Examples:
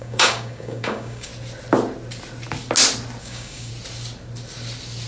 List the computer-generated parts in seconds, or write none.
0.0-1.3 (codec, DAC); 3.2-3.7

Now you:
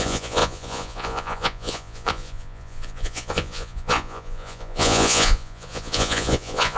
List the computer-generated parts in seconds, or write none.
0.0-6.8 (vocoder, Vocos)

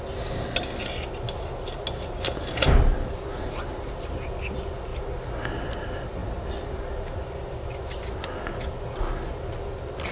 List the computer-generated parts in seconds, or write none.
none

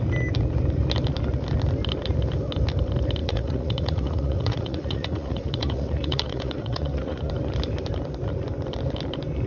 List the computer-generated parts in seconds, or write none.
3.2-7.3 (vocoder, Vocos)

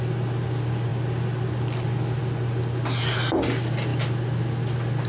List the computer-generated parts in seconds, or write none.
none

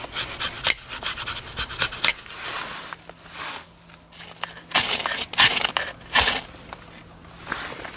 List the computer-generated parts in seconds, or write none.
none